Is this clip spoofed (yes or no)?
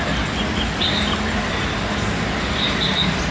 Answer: no